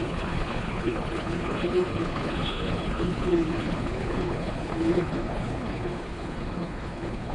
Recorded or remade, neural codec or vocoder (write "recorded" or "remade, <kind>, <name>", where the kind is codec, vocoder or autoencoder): remade, codec, HILCodec